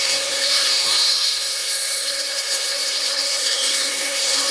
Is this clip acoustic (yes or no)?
no